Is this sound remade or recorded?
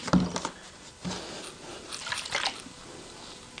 recorded